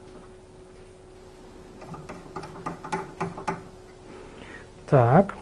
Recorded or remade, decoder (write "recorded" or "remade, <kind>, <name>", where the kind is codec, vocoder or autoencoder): recorded